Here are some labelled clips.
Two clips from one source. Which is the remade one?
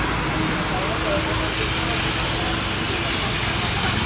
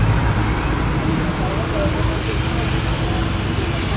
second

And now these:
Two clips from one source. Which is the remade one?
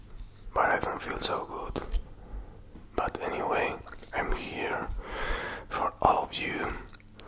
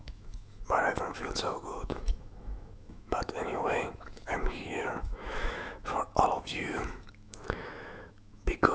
second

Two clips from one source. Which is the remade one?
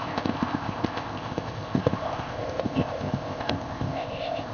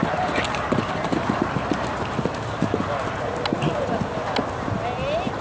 first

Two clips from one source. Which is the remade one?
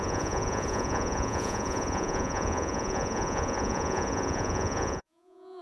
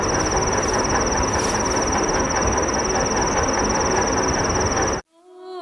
first